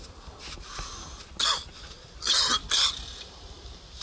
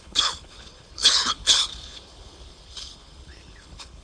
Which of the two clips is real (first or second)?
first